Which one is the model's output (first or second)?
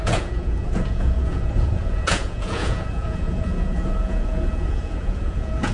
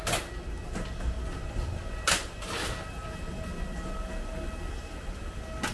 first